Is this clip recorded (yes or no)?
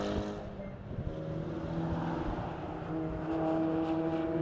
yes